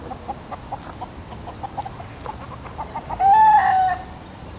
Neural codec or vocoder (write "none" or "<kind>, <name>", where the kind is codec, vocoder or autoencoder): none